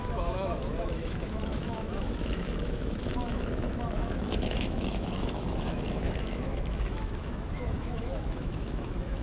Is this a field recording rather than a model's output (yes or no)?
no